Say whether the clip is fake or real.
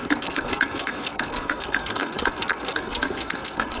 fake